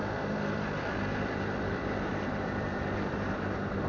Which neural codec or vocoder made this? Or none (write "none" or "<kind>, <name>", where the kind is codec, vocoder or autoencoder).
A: vocoder, BigVGAN v2